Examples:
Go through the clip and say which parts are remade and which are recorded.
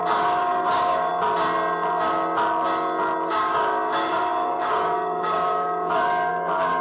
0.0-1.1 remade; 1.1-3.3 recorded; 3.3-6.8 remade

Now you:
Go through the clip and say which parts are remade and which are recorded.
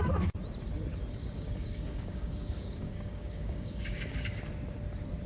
0.0-1.2 recorded; 1.2-4.4 remade; 4.4-5.3 recorded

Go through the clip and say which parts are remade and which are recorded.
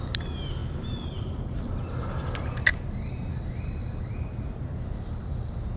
0.0-5.8 recorded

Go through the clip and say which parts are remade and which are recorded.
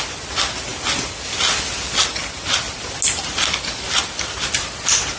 0.0-5.2 recorded